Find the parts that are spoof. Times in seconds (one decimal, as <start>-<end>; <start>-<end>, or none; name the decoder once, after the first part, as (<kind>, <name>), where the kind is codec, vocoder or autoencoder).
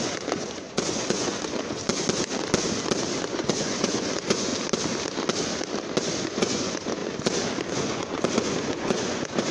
0.0-1.8 (vocoder, Vocos); 3.2-4.5; 6.2-7.0; 7.7-9.5